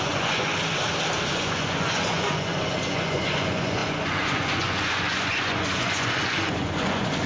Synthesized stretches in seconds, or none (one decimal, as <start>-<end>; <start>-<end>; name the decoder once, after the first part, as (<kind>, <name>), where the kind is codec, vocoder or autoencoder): 0.0-0.5 (vocoder, Vocos); 1.3-7.3